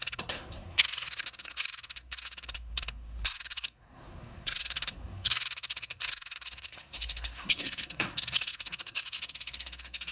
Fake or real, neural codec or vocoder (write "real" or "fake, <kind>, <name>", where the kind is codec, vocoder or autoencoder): fake, codec, SNAC